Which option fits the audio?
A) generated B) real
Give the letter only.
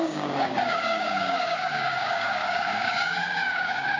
A